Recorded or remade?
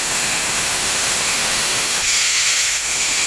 remade